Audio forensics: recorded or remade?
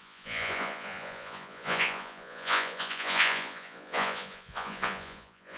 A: remade